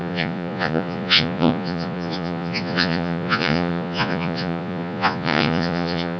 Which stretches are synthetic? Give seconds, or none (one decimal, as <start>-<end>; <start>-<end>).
0.0-6.2